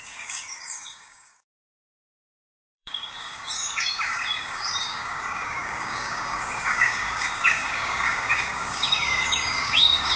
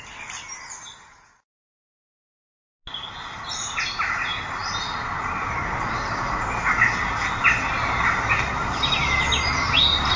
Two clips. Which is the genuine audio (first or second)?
second